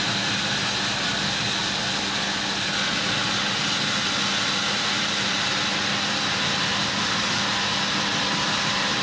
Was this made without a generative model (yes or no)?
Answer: yes